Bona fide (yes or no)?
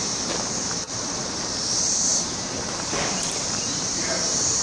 no